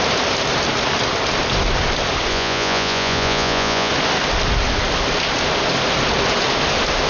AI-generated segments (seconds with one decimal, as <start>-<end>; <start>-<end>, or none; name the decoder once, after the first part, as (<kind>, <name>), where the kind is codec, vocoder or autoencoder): 2.3-3.9 (vocoder, Vocos)